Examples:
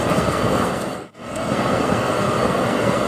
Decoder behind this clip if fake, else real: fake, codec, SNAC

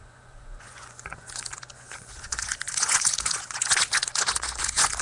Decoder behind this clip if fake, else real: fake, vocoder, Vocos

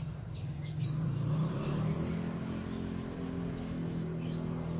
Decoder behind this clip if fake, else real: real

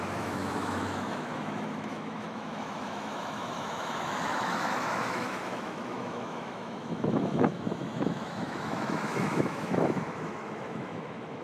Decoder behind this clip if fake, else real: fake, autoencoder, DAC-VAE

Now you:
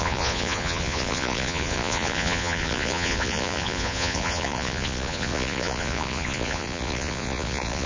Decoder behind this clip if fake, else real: fake, vocoder, Vocos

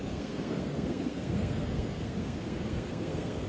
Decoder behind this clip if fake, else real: fake, codec, SNAC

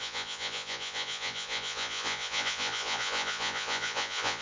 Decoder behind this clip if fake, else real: fake, vocoder, Vocos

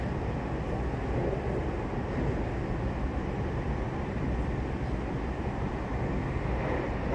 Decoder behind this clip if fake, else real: real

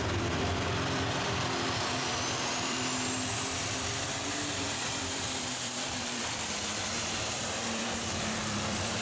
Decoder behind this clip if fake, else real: fake, vocoder, BigVGAN v2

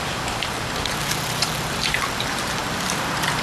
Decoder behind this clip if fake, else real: fake, vocoder, BigVGAN v2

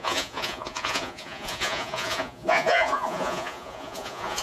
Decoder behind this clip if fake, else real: fake, vocoder, Vocos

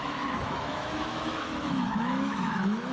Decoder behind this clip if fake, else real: fake, autoencoder, DAC-VAE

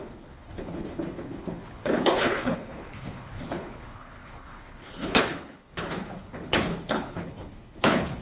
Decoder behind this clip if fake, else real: fake, codec, HILCodec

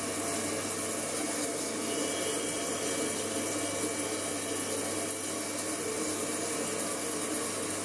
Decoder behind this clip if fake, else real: real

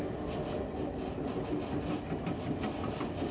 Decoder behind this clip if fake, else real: real